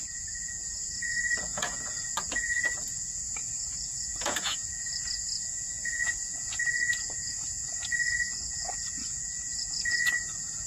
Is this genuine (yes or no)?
no